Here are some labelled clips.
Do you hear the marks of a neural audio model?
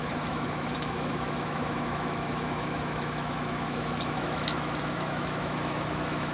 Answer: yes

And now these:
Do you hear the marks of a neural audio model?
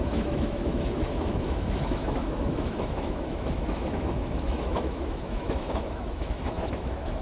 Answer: yes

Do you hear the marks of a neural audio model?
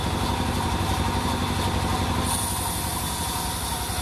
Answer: no